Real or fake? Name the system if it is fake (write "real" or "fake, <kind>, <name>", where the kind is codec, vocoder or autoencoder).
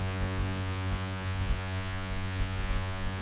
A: fake, vocoder, Vocos